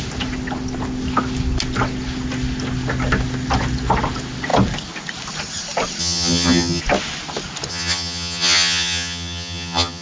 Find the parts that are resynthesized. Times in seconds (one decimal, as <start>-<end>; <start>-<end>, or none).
6.0-6.8; 7.7-10.0